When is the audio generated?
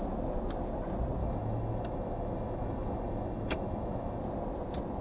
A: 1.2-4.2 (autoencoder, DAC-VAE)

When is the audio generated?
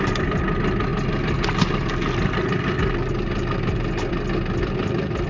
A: none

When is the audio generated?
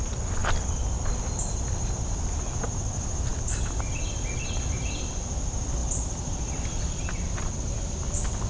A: none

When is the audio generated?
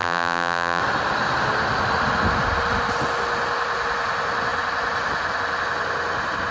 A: 0.0-0.8 (vocoder, BigVGAN v2)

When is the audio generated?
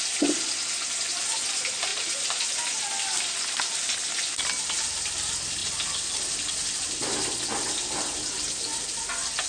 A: none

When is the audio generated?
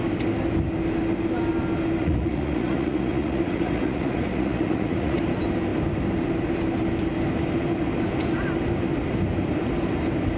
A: 2.0-5.2 (vocoder, Vocos)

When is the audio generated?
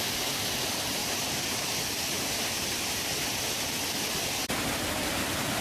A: 0.0-1.0 (vocoder, BigVGAN v2); 1.9-5.6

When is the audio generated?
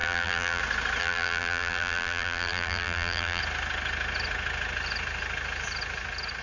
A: 0.0-0.6 (vocoder, BigVGAN v2); 1.0-3.4